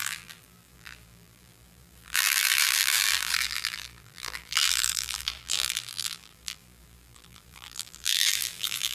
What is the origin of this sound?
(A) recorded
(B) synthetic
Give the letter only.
B